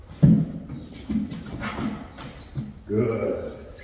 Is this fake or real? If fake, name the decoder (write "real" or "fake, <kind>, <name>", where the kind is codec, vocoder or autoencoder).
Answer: real